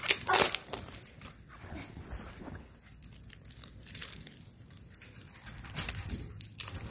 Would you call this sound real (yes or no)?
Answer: no